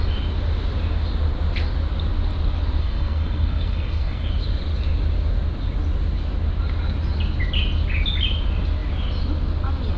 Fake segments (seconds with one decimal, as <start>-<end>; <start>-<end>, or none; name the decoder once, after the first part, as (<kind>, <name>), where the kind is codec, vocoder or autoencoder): 2.8-4.3 (codec, SNAC)